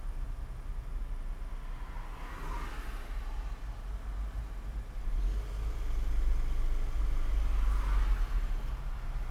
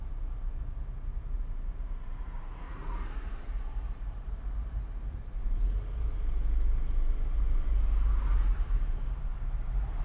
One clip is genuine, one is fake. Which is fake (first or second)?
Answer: second